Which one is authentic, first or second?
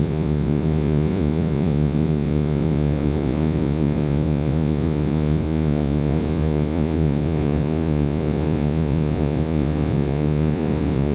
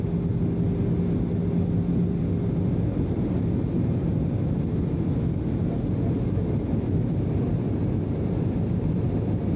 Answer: second